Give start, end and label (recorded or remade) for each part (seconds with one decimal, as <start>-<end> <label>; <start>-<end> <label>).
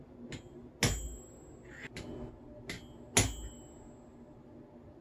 0.0-5.0 recorded